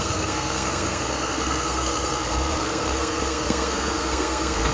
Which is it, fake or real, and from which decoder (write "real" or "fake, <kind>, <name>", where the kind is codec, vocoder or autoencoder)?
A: fake, codec, SNAC